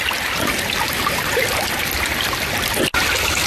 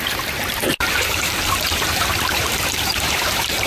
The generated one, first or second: second